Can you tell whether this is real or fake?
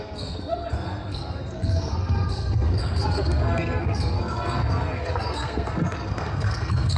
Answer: fake